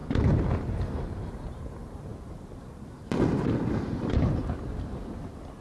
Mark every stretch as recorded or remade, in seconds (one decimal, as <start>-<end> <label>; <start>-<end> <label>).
0.0-1.3 recorded; 1.3-2.1 remade; 2.1-5.6 recorded